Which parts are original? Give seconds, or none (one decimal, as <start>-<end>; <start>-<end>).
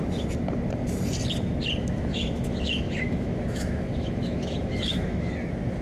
0.0-1.8; 5.3-5.8